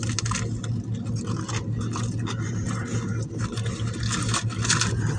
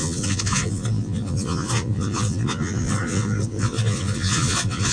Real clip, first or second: first